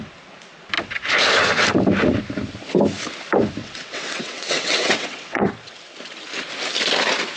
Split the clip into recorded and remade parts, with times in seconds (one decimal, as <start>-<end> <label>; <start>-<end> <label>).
0.0-3.6 recorded; 3.6-5.5 remade; 5.5-7.4 recorded